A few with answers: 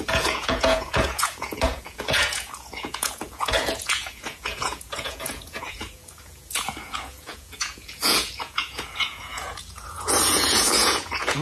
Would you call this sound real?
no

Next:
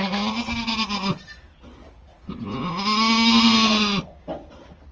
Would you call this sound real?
yes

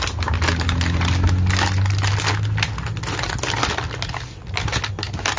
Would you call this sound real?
yes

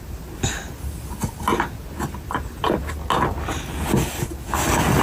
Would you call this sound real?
yes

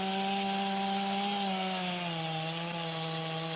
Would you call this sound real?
yes